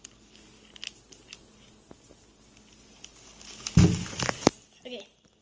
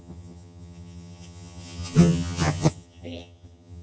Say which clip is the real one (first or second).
first